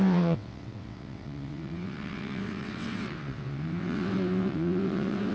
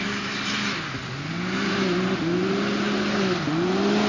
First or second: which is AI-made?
first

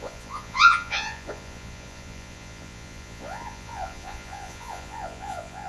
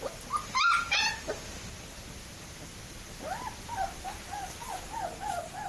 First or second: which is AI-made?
first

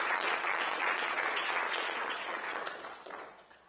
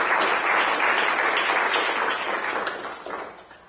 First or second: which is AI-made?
first